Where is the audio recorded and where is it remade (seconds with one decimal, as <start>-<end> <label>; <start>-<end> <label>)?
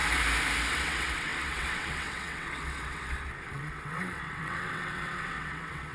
0.0-0.7 recorded; 0.7-5.9 remade